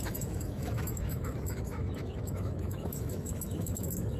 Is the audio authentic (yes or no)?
no